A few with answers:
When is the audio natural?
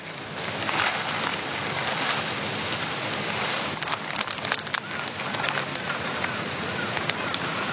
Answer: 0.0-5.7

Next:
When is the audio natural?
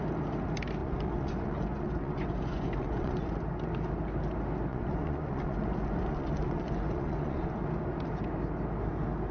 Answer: 0.0-0.8; 3.3-4.7; 7.5-9.3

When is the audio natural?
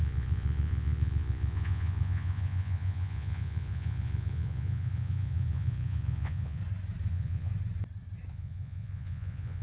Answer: 6.6-7.1; 7.5-8.3